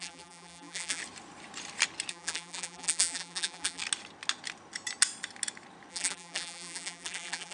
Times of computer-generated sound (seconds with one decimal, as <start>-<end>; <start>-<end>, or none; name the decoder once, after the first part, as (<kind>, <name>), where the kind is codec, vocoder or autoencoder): 0.0-1.0 (vocoder, BigVGAN v2); 2.1-3.8; 5.9-7.5

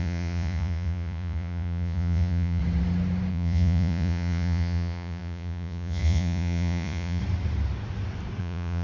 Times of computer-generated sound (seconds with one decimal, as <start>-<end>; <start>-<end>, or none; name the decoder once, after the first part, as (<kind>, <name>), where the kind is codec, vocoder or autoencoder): 0.0-2.6 (vocoder, Vocos); 3.3-7.2; 8.4-8.8

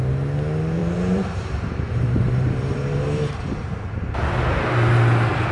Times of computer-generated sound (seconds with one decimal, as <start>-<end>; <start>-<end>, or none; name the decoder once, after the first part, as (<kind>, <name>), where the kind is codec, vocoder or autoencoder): 0.8-4.1 (vocoder, BigVGAN v2)